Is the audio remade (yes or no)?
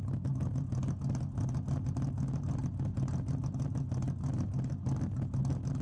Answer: no